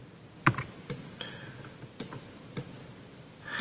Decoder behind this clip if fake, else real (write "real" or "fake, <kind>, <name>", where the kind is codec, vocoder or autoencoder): real